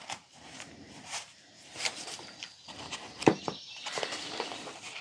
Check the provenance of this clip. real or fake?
fake